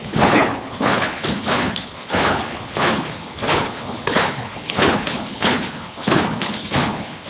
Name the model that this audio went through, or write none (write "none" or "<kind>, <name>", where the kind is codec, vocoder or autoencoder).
codec, HILCodec